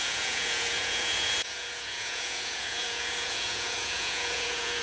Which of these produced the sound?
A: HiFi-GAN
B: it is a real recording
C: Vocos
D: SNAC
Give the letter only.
C